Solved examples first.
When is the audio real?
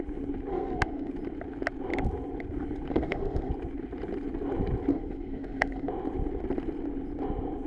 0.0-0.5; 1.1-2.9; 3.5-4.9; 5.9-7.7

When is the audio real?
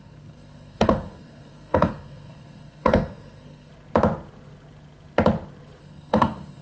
3.7-5.8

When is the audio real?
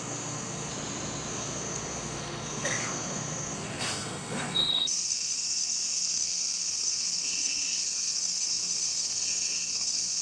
0.7-1.3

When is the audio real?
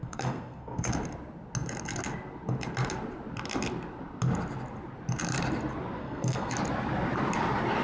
0.9-6.0; 6.5-7.8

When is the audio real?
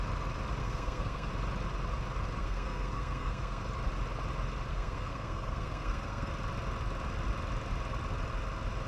0.0-0.6; 1.3-2.4; 3.6-4.7; 6.3-8.9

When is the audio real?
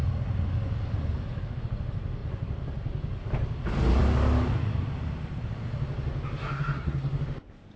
0.0-6.4; 7.2-7.8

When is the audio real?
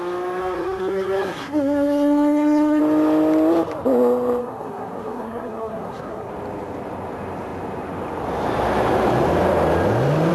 0.0-0.4; 2.8-4.4; 6.3-10.3